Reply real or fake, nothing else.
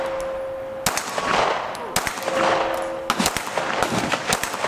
real